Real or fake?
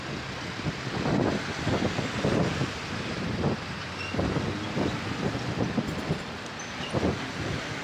fake